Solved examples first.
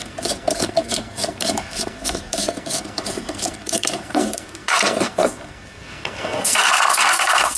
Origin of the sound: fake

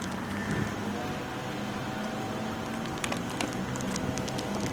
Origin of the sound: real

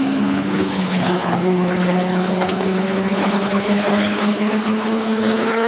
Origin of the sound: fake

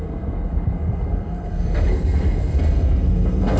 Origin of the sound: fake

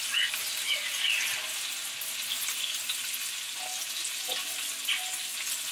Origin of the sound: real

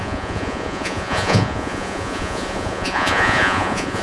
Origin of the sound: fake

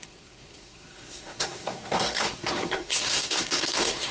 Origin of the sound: fake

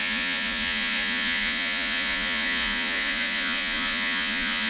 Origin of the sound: fake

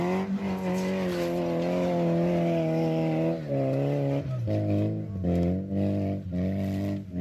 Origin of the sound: real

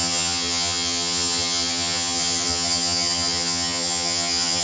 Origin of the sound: fake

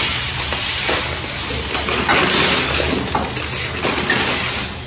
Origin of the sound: real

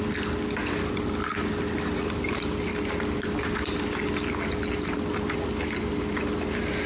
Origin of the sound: real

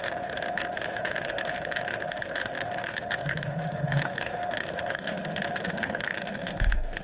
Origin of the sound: fake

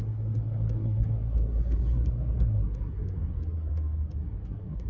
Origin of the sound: fake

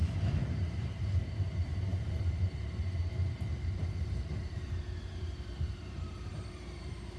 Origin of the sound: fake